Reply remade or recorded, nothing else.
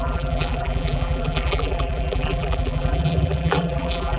remade